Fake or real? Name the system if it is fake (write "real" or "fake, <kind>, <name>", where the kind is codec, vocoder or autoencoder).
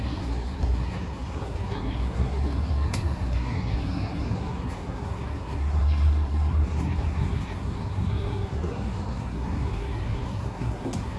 fake, codec, SNAC